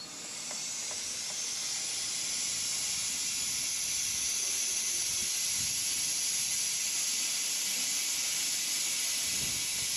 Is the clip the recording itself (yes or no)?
yes